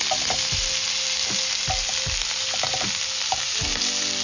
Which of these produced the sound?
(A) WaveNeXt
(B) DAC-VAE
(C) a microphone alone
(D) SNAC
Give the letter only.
C